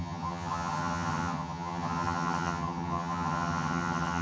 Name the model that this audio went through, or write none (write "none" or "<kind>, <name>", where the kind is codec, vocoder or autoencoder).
vocoder, HiFi-GAN